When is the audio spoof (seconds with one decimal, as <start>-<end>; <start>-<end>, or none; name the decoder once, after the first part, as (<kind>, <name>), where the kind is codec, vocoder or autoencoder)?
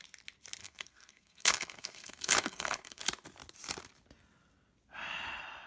0.6-3.0 (codec, SNAC)